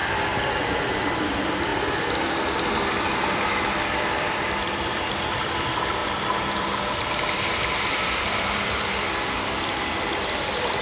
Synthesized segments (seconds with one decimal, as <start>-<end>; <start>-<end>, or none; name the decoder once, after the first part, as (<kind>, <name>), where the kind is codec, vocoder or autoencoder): 1.2-1.7 (vocoder, BigVGAN v2); 2.9-10.8